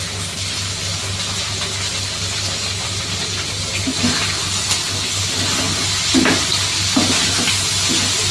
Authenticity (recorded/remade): recorded